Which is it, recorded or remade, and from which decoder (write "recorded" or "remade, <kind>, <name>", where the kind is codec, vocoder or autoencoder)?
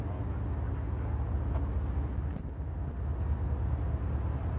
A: recorded